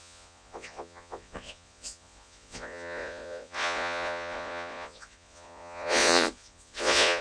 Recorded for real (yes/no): no